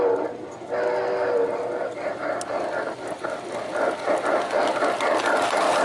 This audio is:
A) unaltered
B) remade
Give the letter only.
A